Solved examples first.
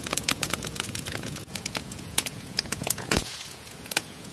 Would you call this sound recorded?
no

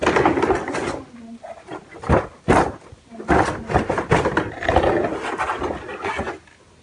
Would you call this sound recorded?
yes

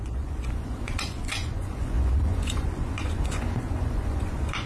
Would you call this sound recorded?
no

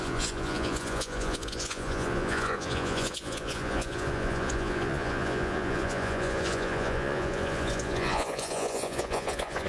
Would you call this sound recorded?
no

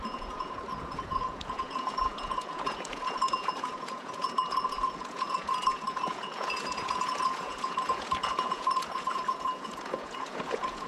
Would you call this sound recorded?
no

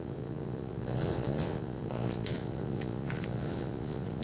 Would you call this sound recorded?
no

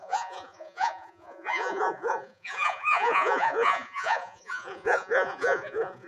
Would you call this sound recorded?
no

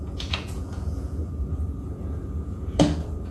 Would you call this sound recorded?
no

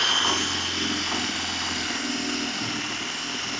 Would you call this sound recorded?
yes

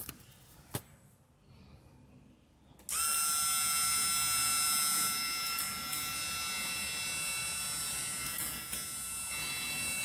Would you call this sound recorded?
yes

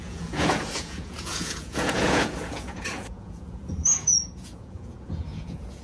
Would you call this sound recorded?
no